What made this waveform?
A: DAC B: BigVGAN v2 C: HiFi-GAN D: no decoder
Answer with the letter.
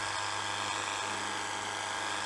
D